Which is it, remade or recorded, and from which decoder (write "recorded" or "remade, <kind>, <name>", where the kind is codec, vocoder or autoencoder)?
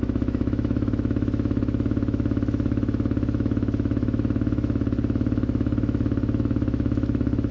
remade, autoencoder, DAC-VAE